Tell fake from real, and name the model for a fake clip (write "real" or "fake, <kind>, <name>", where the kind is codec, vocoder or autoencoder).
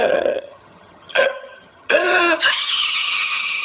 fake, vocoder, HiFi-GAN